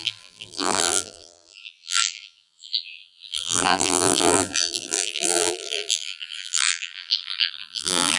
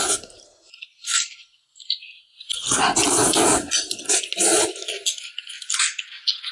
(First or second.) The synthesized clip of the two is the first